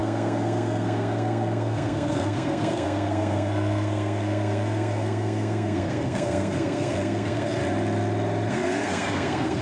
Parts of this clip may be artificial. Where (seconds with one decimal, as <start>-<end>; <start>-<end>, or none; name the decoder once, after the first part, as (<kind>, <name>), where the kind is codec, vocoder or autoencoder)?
0.0-7.6 (codec, SNAC); 8.5-9.6